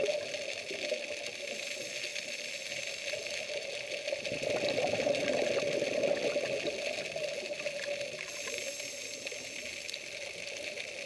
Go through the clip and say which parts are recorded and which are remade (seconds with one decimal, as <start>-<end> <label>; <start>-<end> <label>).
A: 0.0-11.1 recorded